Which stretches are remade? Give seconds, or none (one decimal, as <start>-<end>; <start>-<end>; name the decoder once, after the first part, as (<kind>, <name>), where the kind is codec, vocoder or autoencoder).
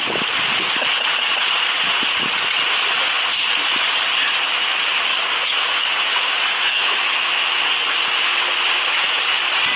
5.1-7.7 (autoencoder, DAC-VAE)